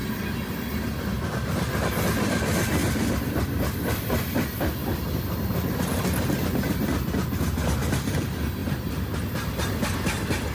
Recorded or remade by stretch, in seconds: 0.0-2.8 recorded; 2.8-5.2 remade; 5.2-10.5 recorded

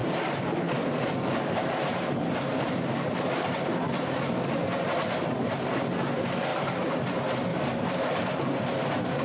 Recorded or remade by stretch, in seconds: 0.0-7.5 recorded; 7.5-8.7 remade; 8.7-9.2 recorded

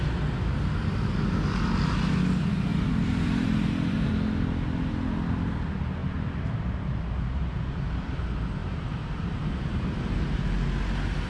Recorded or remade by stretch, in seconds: 0.0-2.7 recorded; 2.7-4.1 remade; 4.1-6.0 recorded; 6.0-8.1 remade; 8.1-8.6 recorded; 8.6-10.4 remade; 10.4-11.3 recorded

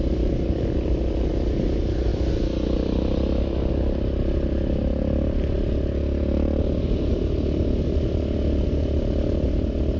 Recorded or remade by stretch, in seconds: 0.0-10.0 recorded